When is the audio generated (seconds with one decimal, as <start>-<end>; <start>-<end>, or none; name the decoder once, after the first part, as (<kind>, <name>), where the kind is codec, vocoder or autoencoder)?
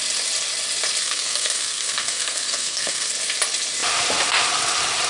1.0-3.1 (codec, SNAC)